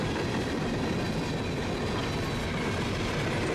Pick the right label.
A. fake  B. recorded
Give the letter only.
B